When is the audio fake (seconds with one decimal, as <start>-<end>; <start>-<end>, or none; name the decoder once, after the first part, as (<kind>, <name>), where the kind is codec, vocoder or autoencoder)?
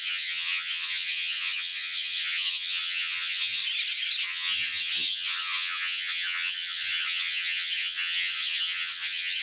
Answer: 0.0-3.6 (vocoder, HiFi-GAN); 4.2-9.4